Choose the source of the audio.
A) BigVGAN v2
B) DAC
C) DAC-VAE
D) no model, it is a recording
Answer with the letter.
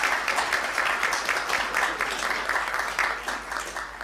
D